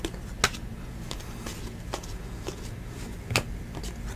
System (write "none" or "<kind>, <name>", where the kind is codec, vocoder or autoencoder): none